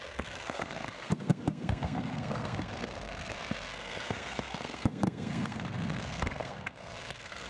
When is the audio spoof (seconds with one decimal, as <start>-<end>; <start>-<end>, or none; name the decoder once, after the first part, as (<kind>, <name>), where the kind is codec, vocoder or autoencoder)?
0.0-7.5 (codec, SNAC)